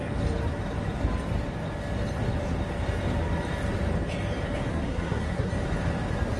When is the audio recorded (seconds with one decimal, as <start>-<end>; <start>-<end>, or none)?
0.0-4.7; 5.5-6.4